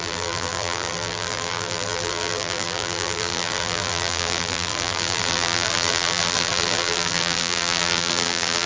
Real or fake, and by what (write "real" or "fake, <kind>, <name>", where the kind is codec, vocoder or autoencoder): fake, vocoder, BigVGAN v2